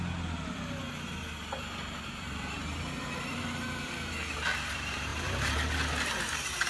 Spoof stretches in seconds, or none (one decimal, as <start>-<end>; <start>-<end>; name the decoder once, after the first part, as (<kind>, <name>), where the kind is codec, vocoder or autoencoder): none